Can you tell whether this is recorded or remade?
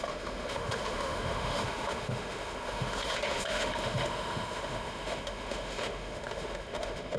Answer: remade